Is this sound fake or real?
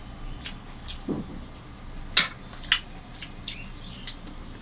real